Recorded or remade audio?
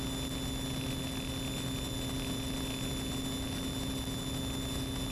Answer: recorded